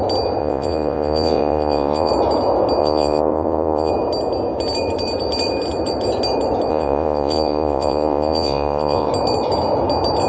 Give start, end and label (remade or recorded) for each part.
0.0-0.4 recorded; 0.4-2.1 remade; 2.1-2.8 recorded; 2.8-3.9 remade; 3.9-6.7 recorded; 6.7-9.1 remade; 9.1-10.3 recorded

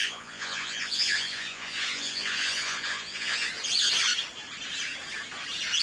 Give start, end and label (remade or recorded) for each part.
0.0-3.5 remade; 3.5-5.8 recorded